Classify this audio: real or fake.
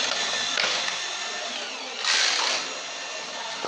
real